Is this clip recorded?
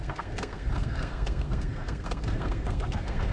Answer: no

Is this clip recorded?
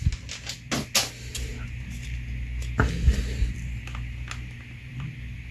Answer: yes